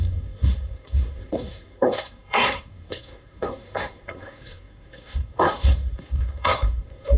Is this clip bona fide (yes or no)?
no